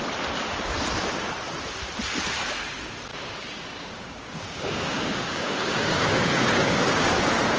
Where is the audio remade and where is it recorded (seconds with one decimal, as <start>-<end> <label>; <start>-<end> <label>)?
0.0-3.1 recorded; 3.1-7.1 remade; 7.1-7.6 recorded